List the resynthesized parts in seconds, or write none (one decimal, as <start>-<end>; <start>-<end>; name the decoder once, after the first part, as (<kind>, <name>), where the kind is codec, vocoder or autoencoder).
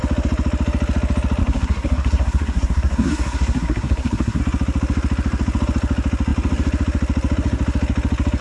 1.4-4.4 (codec, SNAC)